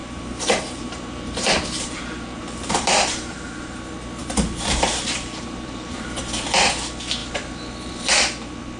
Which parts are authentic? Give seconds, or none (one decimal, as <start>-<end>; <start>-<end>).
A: 3.8-4.2; 6.2-8.8